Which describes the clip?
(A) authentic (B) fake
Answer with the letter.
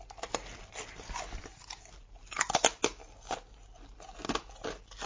A